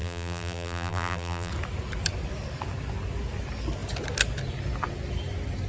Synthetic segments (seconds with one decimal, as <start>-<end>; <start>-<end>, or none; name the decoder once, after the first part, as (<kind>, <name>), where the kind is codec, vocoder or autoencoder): 0.0-1.5 (vocoder, BigVGAN v2)